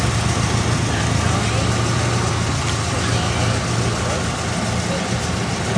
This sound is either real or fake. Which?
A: real